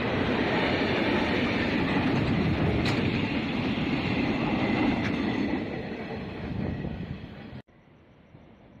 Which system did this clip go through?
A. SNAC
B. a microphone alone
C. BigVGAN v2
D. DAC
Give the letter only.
C